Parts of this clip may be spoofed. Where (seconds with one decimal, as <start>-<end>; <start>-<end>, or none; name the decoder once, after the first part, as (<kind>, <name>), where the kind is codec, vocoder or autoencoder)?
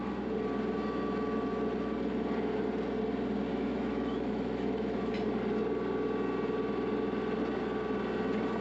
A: 3.5-5.1 (autoencoder, DAC-VAE)